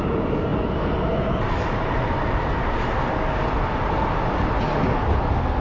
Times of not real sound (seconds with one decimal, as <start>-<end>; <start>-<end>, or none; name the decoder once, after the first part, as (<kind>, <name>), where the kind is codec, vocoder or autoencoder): none

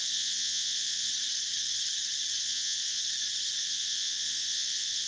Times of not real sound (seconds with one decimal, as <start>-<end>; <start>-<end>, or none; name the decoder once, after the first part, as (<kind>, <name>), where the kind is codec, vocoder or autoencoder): 0.0-1.1 (vocoder, Vocos); 2.4-3.0; 3.6-5.1

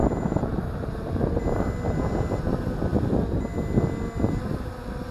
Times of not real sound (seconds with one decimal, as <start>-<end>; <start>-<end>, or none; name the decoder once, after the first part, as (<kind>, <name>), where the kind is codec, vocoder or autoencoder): 0.0-1.2 (vocoder, BigVGAN v2)

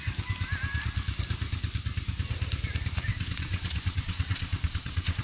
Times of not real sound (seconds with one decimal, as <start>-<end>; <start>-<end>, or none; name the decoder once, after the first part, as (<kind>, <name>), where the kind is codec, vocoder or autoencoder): 3.1-5.2 (vocoder, WaveNeXt)

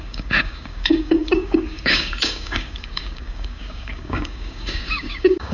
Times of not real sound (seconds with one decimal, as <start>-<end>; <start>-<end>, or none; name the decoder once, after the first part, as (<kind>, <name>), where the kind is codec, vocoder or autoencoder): 0.0-5.5 (codec, DAC)

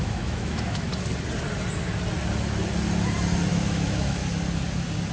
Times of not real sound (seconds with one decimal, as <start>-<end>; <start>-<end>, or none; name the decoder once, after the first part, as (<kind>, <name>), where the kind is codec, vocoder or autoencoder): 0.0-0.9 (autoencoder, DAC-VAE); 3.5-4.2

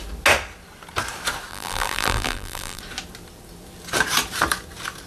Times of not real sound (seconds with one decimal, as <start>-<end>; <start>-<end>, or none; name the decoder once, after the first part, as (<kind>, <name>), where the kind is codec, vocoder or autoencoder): 1.5-2.8 (vocoder, BigVGAN v2)